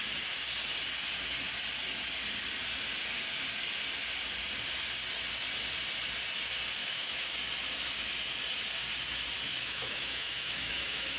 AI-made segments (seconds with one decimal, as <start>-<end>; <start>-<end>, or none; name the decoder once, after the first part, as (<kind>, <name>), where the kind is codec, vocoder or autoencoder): 6.8-7.3 (autoencoder, DAC-VAE); 9.5-11.2

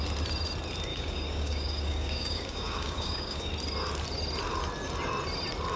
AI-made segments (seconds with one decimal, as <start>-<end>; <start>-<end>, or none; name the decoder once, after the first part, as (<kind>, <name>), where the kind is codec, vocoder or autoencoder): 0.9-3.5 (codec, DAC)

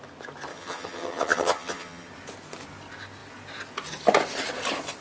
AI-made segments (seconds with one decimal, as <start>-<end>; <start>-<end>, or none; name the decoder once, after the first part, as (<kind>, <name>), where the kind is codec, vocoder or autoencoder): 0.5-2.1 (vocoder, HiFi-GAN)